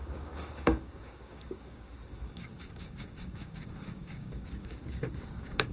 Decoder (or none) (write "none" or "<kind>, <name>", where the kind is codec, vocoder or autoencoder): codec, DAC